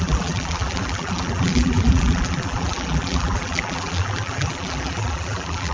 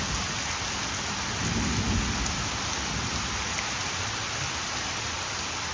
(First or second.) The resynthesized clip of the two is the first